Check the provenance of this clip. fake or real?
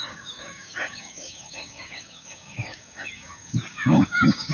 fake